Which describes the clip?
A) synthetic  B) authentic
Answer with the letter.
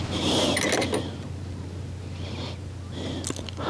B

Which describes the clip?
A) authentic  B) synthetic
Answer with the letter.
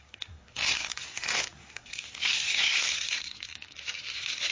B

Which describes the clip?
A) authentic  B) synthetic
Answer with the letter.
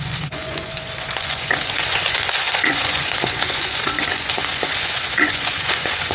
B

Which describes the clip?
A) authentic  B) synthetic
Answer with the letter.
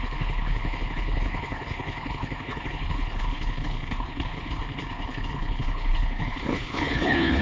B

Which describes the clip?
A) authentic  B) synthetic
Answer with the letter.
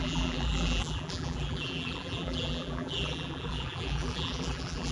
B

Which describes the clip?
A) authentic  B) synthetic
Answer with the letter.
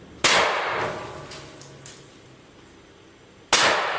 A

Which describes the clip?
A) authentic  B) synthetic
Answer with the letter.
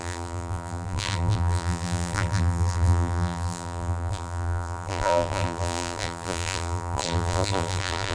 B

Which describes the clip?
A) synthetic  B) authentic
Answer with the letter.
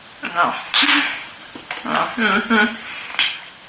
B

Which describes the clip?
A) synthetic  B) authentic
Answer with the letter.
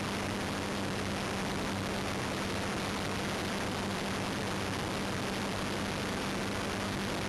B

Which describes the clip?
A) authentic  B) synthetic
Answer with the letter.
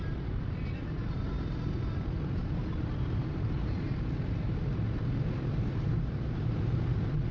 B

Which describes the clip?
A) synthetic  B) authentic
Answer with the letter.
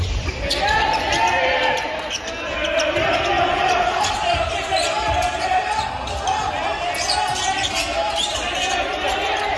B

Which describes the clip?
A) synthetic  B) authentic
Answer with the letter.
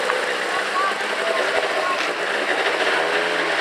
B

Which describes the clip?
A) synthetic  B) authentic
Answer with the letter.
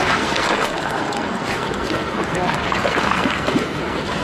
A